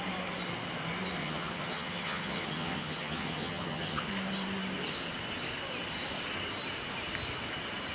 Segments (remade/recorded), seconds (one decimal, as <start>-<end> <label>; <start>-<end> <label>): 0.0-1.2 recorded; 1.2-4.1 remade; 4.1-7.9 recorded